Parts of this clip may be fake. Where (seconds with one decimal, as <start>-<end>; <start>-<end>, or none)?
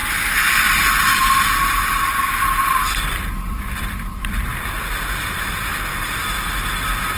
0.0-4.3